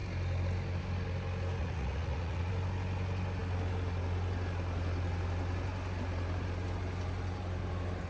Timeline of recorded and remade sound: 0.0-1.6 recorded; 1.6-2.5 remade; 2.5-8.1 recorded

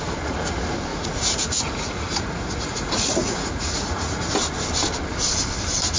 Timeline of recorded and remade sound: 0.0-0.9 recorded; 0.9-4.3 remade; 4.3-6.0 recorded

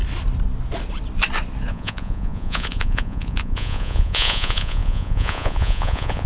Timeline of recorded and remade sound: 0.0-1.7 recorded; 1.7-6.3 remade

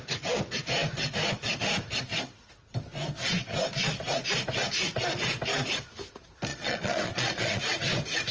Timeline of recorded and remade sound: 0.0-6.5 recorded; 6.5-7.6 remade; 7.6-8.3 recorded

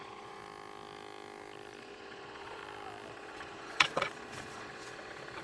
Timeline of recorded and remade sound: 0.0-0.4 remade; 0.4-1.8 recorded; 1.8-2.6 remade; 2.6-3.1 recorded; 3.1-5.4 remade

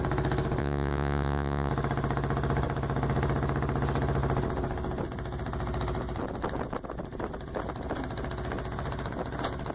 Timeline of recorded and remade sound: 0.0-0.6 recorded; 0.6-1.7 remade; 1.7-9.7 recorded